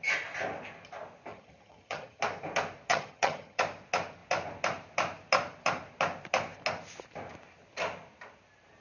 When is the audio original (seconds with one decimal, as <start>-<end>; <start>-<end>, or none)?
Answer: 0.0-1.3; 2.2-2.9; 3.6-8.8